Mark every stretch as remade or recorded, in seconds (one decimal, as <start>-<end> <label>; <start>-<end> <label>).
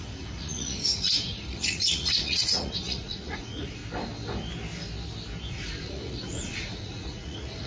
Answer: 0.0-3.8 remade; 3.8-5.5 recorded; 5.5-7.7 remade